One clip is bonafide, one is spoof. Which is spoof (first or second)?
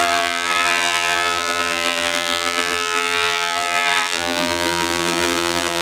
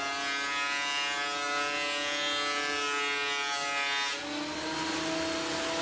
first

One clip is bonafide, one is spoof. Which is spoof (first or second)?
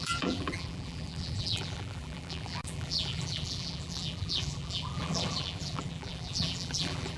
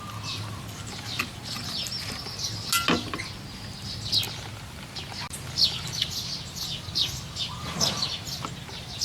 first